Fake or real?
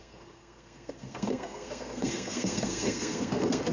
fake